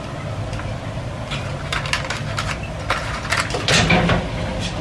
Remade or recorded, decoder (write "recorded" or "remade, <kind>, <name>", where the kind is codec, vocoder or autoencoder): recorded